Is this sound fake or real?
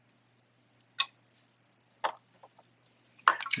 real